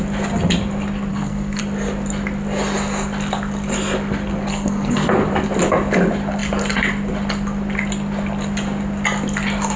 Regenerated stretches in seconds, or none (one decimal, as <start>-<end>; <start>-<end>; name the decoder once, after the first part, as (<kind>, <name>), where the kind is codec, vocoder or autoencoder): 1.1-1.6 (codec, SNAC); 4.5-5.1